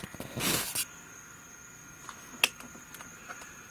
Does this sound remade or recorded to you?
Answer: recorded